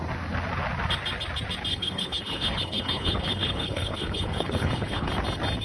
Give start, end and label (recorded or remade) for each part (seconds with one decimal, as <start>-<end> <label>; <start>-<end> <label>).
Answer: 0.0-1.7 recorded; 1.7-5.1 remade; 5.1-5.6 recorded

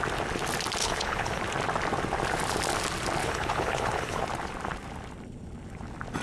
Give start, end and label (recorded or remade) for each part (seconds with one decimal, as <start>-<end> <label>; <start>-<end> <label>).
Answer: 0.0-0.8 recorded; 0.8-1.4 remade; 1.4-3.2 recorded; 3.2-4.2 remade; 4.2-6.2 recorded